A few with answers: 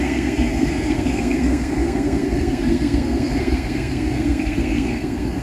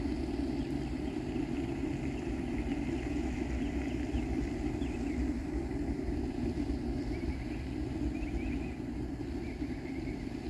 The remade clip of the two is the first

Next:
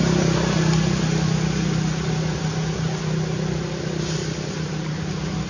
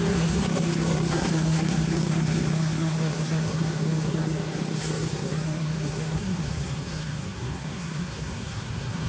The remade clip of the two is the second